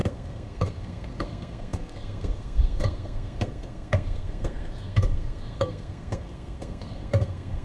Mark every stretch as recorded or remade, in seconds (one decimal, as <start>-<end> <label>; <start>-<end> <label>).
0.0-7.6 remade